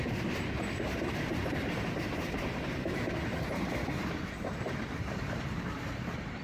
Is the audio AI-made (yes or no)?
yes